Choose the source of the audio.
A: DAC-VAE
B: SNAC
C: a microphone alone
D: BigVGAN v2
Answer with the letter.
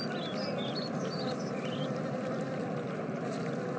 C